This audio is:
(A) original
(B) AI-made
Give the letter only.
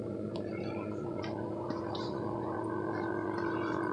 B